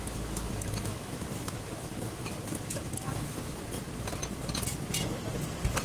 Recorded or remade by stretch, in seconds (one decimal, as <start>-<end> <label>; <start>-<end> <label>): 0.0-3.6 remade; 3.6-5.8 recorded